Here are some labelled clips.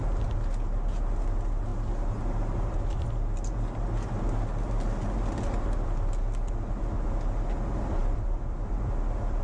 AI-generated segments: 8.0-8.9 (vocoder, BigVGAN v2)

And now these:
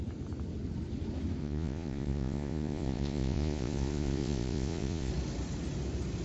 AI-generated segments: 1.4-5.1 (vocoder, Vocos)

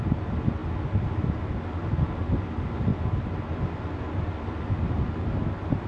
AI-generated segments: none

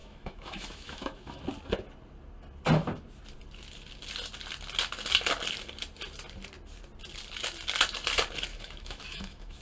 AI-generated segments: 0.0-1.4 (autoencoder, DAC-VAE); 8.5-9.6